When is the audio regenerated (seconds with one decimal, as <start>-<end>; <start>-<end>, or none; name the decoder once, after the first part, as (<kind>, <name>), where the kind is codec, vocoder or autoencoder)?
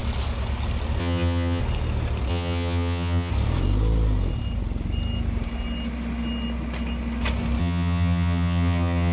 1.0-1.6 (vocoder, HiFi-GAN); 2.3-3.3; 7.6-9.1